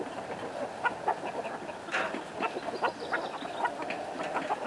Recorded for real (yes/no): yes